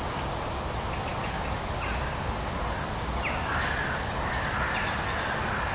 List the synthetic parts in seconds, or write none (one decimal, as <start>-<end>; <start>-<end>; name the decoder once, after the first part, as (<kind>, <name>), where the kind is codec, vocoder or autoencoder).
none